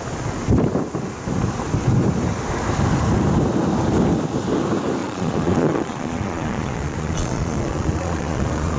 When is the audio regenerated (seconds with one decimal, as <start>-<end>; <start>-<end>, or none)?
5.0-8.8